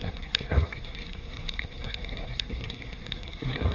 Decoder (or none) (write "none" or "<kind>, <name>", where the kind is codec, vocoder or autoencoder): codec, SNAC